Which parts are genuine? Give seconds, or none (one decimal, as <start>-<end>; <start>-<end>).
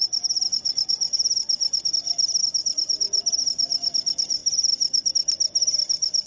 1.9-2.4; 3.4-4.4; 5.1-6.3